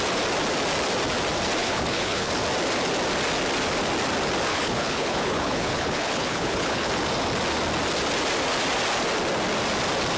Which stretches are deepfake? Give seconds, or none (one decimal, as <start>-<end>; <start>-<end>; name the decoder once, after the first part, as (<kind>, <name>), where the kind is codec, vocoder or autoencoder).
1.6-2.3 (codec, HILCodec); 4.5-6.9